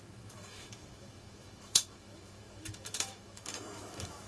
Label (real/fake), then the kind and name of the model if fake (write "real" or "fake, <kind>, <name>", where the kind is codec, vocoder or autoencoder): fake, autoencoder, DAC-VAE